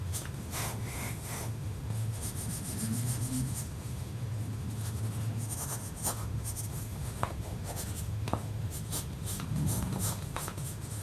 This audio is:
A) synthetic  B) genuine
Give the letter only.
A